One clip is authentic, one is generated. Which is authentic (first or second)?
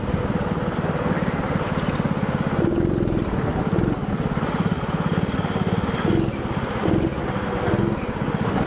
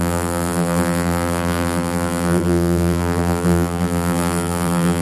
first